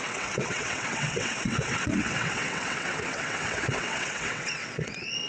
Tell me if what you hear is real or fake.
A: fake